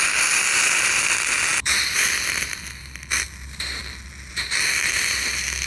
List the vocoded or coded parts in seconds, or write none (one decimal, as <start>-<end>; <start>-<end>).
none